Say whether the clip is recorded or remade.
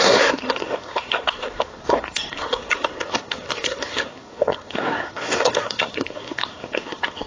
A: remade